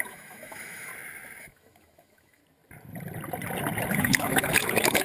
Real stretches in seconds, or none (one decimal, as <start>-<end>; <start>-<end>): 0.9-1.4; 2.4-3.9